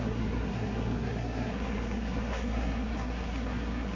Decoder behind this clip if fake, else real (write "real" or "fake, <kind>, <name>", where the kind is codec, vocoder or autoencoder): fake, codec, SNAC